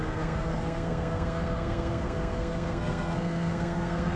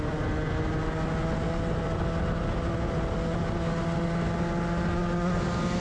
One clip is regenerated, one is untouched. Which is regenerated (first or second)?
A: first